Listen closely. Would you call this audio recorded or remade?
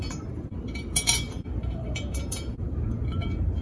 remade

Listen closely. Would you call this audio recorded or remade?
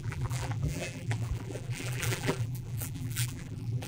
remade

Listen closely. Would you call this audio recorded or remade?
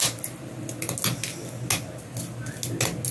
recorded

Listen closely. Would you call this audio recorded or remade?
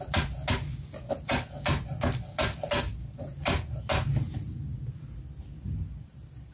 recorded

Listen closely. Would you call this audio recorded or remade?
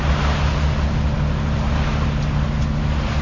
recorded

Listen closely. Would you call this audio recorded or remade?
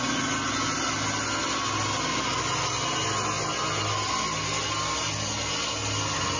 recorded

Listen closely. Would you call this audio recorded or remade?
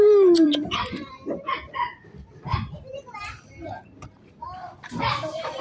remade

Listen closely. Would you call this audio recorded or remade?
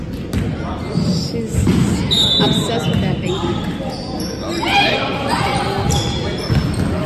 recorded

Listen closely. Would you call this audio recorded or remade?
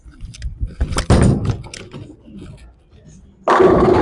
recorded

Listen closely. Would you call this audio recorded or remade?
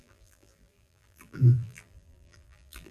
remade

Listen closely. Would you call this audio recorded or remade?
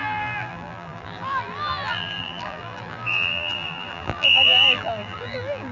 remade